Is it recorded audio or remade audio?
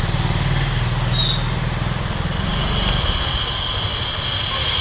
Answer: recorded